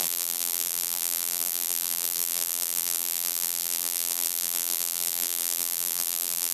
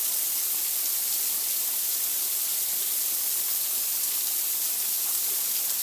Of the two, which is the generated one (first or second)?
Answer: first